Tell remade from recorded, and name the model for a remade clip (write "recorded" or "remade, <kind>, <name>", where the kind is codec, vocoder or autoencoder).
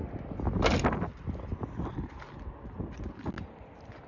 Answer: recorded